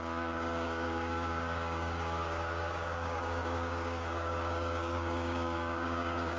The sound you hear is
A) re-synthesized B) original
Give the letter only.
A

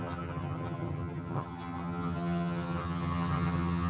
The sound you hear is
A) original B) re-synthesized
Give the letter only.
B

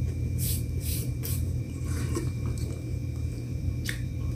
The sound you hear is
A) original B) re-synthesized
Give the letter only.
B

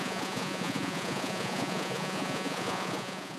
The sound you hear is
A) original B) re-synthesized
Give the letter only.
B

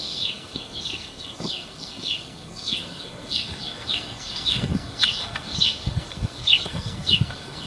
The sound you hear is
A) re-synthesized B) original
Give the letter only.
A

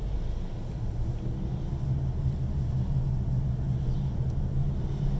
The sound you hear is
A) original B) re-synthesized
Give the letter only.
A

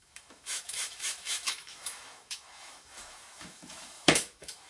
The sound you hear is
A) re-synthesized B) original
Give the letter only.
A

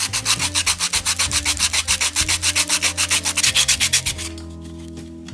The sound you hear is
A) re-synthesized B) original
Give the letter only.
B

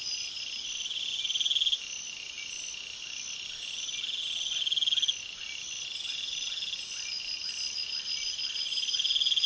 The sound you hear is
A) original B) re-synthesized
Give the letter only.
A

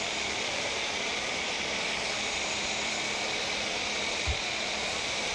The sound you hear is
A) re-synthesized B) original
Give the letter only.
A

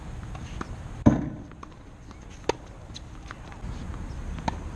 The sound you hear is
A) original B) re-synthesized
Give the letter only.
A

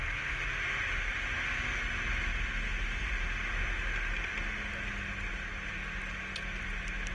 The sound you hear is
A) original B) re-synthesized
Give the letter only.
A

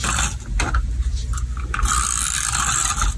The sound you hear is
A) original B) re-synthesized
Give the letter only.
A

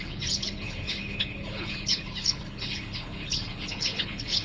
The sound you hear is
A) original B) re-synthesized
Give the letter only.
B